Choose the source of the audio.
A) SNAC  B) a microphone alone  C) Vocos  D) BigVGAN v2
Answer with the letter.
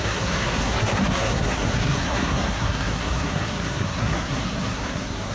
A